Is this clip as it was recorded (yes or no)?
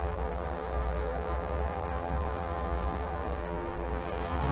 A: no